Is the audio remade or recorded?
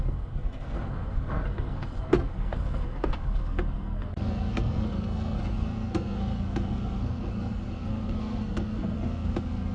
remade